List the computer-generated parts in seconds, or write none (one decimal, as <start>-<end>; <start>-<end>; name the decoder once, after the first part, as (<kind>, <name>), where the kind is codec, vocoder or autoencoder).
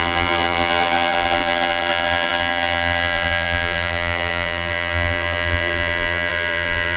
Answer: 0.0-7.0 (vocoder, BigVGAN v2)